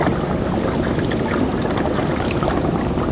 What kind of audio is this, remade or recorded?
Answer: recorded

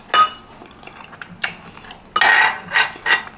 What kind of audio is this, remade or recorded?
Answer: recorded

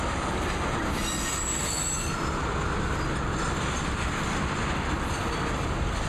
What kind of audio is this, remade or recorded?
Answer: recorded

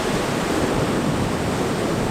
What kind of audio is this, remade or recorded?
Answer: recorded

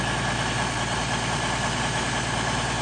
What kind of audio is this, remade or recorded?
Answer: recorded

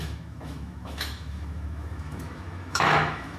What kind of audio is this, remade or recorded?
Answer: remade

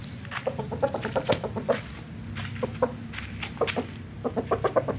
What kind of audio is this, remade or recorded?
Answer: recorded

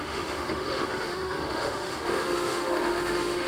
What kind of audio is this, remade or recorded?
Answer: remade